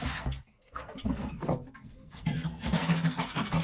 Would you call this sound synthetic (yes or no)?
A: yes